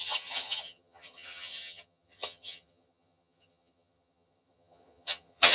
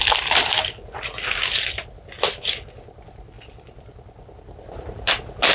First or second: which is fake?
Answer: first